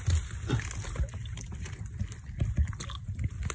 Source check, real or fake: real